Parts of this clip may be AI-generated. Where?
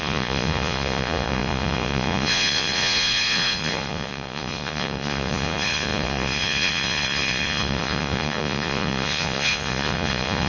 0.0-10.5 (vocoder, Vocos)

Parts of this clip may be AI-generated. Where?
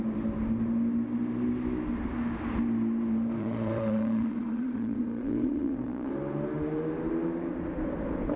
3.4-6.1 (vocoder, Vocos)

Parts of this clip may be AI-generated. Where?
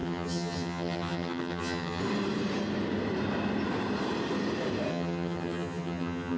0.0-2.0 (vocoder, HiFi-GAN); 4.9-6.4